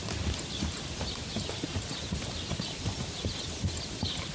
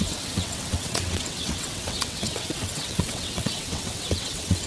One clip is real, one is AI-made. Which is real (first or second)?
first